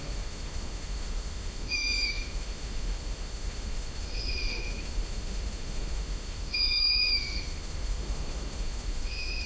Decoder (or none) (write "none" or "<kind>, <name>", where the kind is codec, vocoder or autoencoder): autoencoder, DAC-VAE